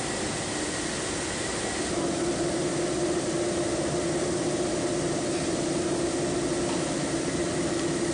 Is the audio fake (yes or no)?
no